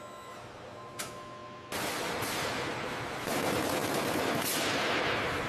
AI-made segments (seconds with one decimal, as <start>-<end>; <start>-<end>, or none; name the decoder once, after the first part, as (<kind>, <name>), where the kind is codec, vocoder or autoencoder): none